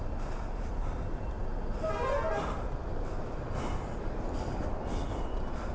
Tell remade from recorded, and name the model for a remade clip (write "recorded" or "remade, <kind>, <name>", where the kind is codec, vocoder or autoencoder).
recorded